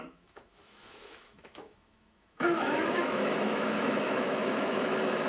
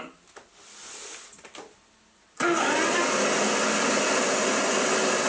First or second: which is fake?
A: first